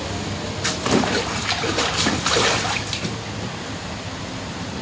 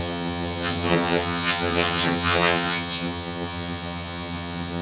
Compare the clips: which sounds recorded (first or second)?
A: first